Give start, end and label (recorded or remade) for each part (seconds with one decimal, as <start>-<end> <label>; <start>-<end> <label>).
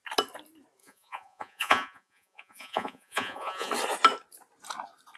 0.0-0.8 recorded; 0.8-3.7 remade; 3.7-5.2 recorded